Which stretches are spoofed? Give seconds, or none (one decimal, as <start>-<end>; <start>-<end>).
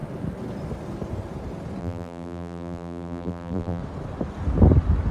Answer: 1.8-3.8